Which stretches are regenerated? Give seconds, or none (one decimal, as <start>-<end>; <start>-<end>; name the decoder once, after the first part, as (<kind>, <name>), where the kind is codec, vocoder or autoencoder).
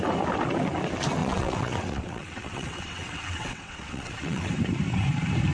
1.2-4.5 (vocoder, WaveNeXt)